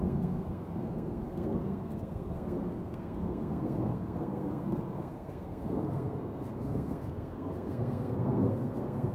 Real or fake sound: fake